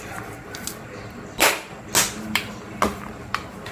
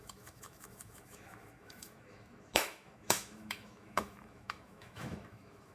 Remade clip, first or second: second